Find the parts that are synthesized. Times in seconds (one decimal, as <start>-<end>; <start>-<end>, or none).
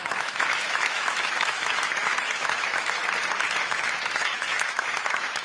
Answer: 0.0-3.0; 3.6-5.4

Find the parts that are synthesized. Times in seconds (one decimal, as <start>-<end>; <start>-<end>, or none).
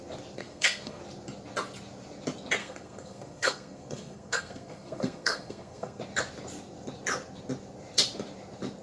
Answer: 0.4-1.0; 2.6-6.0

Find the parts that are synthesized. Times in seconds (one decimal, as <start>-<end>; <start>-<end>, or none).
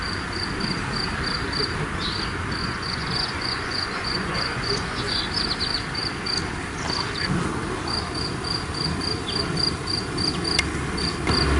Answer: 2.6-5.2